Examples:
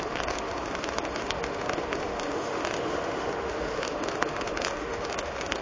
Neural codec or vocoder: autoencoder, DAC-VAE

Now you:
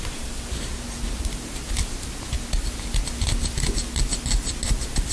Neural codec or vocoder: none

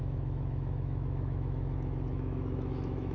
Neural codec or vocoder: autoencoder, DAC-VAE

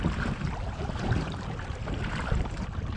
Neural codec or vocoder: vocoder, BigVGAN v2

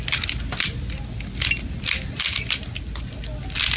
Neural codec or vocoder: none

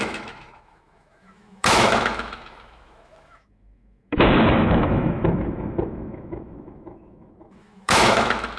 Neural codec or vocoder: autoencoder, DAC-VAE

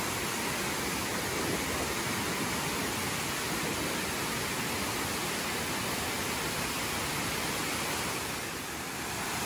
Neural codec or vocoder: none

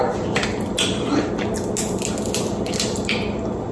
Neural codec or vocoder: none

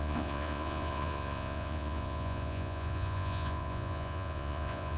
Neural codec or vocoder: vocoder, Vocos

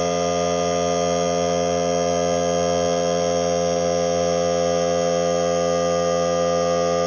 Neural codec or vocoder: none